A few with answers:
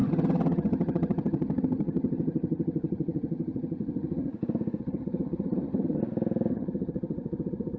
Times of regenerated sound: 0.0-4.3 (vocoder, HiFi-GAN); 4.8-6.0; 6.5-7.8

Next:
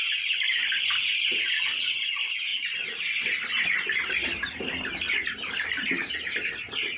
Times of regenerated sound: none

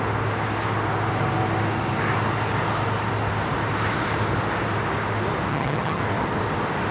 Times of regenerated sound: 5.5-6.0 (vocoder, HiFi-GAN)

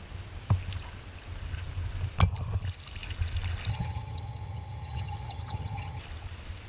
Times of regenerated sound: 3.7-6.0 (vocoder, HiFi-GAN)

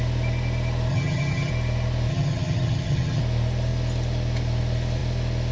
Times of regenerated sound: 0.9-1.5 (vocoder, HiFi-GAN); 2.1-3.2